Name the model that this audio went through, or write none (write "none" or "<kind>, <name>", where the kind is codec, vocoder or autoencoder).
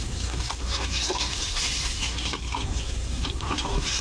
codec, SNAC